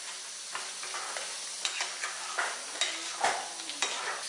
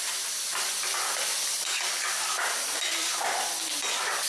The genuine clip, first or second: first